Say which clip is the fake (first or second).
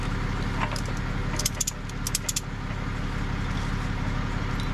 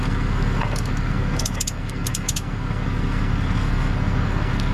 second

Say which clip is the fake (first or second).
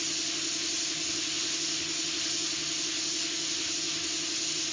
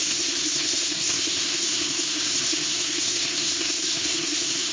second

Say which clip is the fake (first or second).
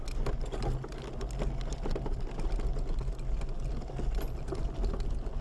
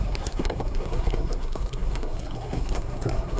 second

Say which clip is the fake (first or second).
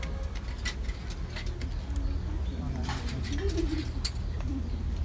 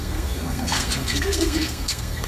second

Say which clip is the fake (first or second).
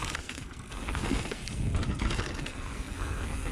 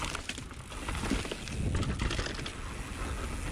first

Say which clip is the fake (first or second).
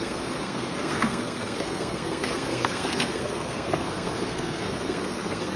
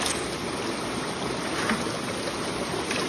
first